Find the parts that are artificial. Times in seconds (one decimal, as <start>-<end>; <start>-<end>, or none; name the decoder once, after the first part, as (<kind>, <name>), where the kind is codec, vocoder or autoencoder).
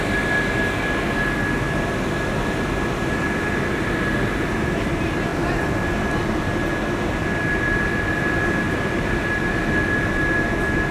none